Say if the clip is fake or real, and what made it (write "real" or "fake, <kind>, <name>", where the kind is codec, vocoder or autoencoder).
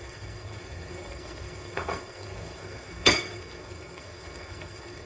fake, codec, SNAC